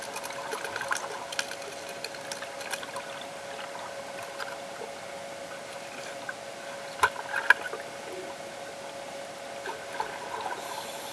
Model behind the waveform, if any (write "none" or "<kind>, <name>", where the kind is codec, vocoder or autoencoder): none